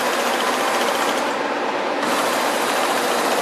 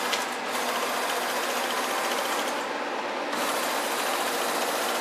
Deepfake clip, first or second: first